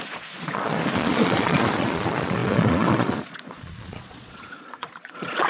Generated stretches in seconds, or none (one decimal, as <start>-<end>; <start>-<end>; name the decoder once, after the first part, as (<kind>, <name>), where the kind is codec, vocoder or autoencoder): 0.0-5.5 (vocoder, Vocos)